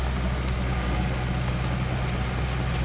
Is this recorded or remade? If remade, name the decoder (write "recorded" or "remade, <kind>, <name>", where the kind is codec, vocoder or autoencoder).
recorded